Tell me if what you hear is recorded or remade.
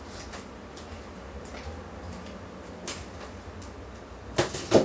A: recorded